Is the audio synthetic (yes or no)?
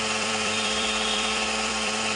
yes